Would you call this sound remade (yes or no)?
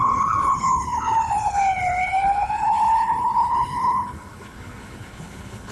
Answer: yes